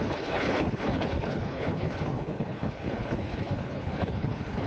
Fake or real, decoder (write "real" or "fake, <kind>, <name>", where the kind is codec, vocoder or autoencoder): fake, codec, HILCodec